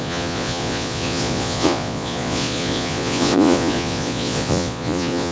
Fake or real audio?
fake